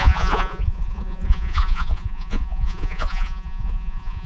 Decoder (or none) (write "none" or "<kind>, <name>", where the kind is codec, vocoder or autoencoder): vocoder, Vocos